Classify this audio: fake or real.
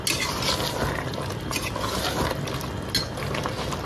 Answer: real